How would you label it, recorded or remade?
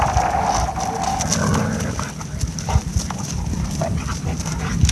recorded